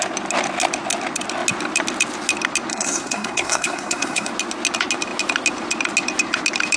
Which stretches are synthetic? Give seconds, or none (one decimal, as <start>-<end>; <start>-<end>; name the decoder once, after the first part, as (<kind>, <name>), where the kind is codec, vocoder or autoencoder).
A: 2.7-4.3 (codec, SNAC)